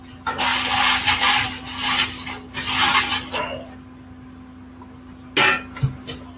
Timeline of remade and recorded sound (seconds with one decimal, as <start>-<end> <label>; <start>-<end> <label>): 0.0-6.4 recorded